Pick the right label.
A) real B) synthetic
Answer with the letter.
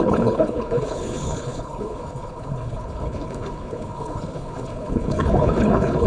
B